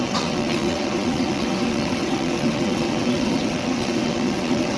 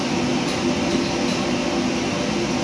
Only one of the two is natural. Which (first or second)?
second